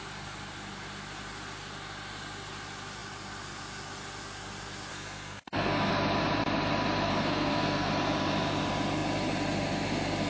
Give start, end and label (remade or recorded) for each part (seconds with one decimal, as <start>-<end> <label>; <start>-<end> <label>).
0.0-4.9 recorded; 4.9-5.9 remade; 5.9-7.1 recorded; 7.1-7.9 remade; 7.9-10.3 recorded